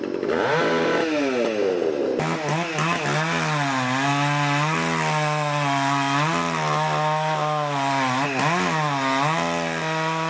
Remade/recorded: recorded